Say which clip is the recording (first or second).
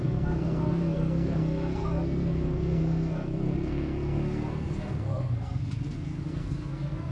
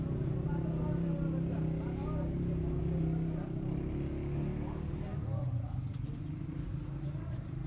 second